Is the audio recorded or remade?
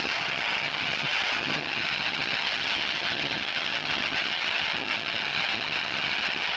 remade